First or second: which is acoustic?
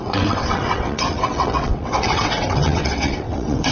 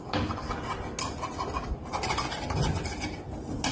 second